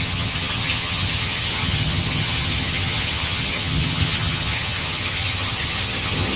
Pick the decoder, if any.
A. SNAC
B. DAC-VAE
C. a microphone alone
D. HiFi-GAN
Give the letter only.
D